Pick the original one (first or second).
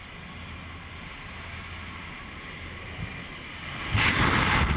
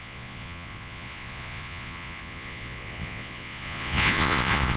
first